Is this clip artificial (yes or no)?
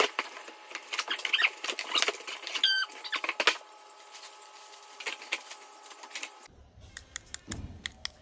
no